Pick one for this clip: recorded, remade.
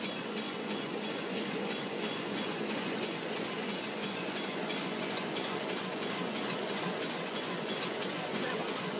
remade